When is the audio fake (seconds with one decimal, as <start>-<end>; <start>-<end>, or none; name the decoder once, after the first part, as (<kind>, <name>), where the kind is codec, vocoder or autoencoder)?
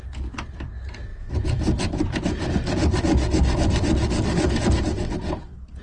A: none